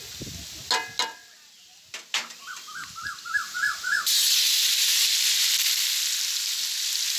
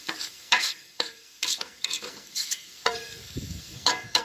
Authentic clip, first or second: first